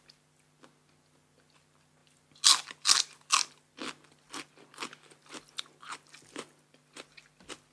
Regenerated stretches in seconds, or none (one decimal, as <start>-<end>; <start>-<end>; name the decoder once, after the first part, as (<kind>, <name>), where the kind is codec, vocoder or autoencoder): none